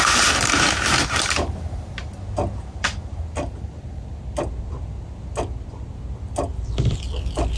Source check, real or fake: real